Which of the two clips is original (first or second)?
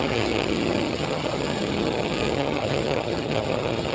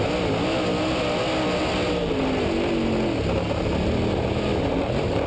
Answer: second